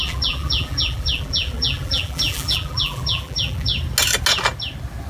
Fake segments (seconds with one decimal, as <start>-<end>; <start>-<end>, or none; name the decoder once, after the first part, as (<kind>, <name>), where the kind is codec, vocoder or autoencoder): 0.0-3.7 (vocoder, BigVGAN v2)